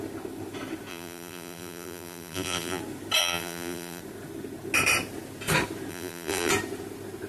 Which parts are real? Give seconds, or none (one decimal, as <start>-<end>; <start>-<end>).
0.0-0.9; 2.8-3.2; 4.0-5.9; 6.5-7.3

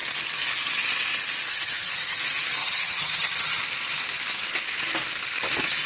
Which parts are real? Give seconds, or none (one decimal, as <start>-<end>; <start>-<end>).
0.0-1.5; 2.2-2.6; 3.6-5.9

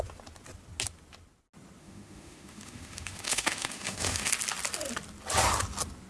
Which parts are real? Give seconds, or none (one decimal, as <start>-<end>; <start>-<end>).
0.0-1.8; 4.3-6.1

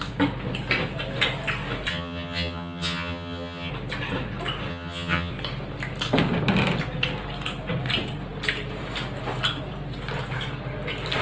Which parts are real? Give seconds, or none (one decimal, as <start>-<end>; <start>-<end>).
0.0-1.9; 3.7-4.7; 5.3-11.2

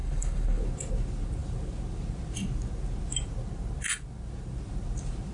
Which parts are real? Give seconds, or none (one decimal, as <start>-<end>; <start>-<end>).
0.6-5.3